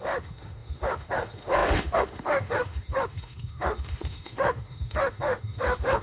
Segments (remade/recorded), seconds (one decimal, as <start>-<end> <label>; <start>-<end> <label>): 0.0-6.0 remade